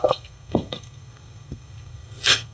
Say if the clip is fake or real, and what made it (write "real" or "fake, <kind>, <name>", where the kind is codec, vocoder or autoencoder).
fake, codec, SNAC